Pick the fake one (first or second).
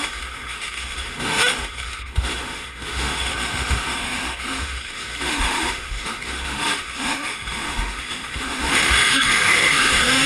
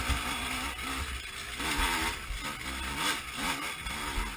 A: first